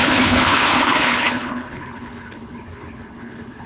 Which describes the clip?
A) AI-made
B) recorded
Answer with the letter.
A